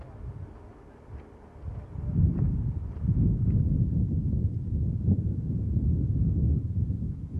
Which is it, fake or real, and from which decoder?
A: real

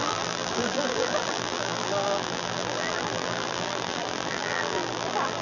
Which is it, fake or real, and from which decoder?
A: fake, vocoder, BigVGAN v2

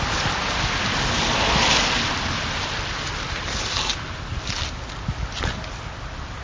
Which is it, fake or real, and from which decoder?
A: real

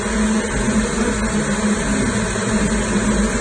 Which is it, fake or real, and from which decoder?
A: real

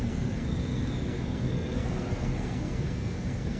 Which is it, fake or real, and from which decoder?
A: fake, codec, SNAC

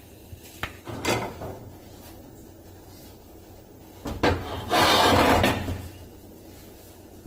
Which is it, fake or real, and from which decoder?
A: real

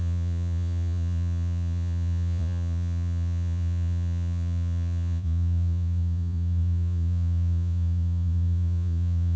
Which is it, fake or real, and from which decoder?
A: fake, vocoder, Vocos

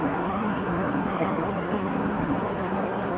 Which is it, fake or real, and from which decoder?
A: fake, codec, SNAC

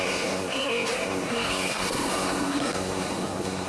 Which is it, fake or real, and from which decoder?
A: fake, codec, SNAC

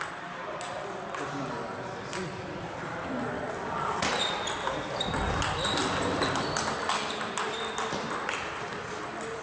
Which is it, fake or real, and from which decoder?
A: real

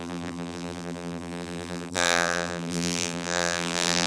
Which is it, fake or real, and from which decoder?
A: fake, vocoder, BigVGAN v2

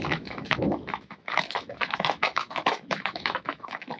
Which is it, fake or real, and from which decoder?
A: fake, autoencoder, DAC-VAE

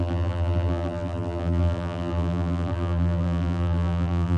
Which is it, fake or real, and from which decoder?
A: fake, vocoder, BigVGAN v2